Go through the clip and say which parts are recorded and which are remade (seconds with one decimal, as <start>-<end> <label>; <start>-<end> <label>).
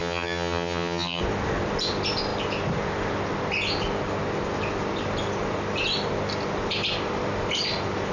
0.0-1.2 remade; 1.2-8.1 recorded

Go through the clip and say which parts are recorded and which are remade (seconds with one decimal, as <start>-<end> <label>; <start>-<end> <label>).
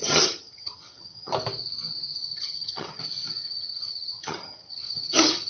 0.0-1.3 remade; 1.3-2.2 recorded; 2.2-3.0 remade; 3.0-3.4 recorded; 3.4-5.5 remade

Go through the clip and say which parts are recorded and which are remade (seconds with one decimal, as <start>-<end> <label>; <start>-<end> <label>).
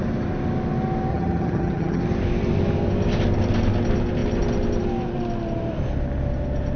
0.0-1.1 recorded; 1.1-2.0 remade; 2.0-6.8 recorded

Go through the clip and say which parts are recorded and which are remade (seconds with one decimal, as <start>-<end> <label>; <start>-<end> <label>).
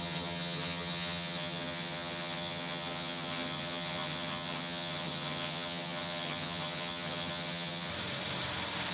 0.0-7.9 remade; 7.9-8.9 recorded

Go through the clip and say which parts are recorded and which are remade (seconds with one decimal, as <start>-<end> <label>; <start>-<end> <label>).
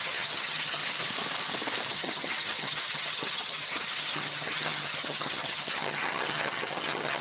0.0-0.8 remade; 0.8-1.9 recorded; 1.9-7.2 remade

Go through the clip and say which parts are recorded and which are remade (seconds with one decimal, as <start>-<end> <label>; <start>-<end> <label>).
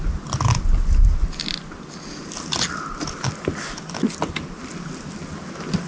0.0-5.9 recorded